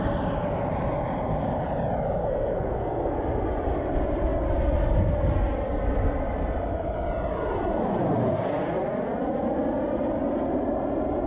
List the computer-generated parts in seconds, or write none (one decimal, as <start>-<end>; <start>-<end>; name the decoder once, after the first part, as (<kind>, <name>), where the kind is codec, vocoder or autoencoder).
2.2-3.2 (codec, SNAC)